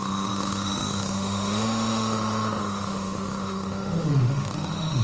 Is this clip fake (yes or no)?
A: yes